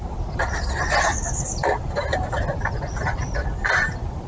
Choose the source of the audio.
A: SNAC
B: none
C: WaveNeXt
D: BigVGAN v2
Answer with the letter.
B